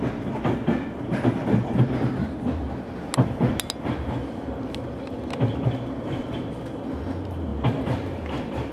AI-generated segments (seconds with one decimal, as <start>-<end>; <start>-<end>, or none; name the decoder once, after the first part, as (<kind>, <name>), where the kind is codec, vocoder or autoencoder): none